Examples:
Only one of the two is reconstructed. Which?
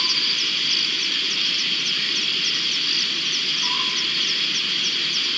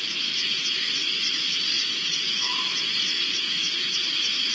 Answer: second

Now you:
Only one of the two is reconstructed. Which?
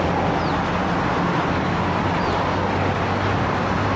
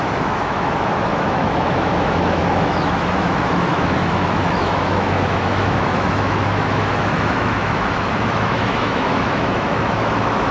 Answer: second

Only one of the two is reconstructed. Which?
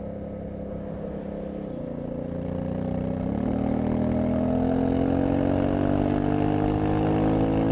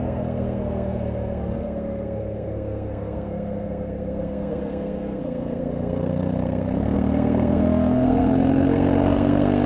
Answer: second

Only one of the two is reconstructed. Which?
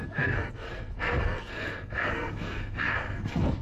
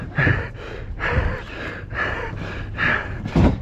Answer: first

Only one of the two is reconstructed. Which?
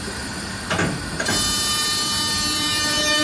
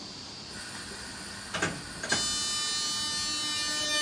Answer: first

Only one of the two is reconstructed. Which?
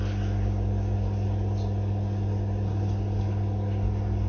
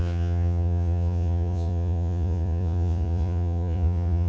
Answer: second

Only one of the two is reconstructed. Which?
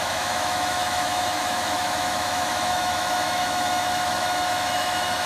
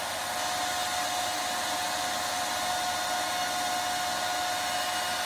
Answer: first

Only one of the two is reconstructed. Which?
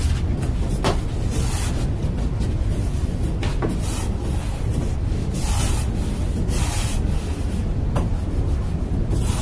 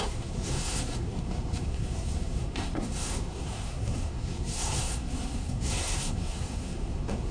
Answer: second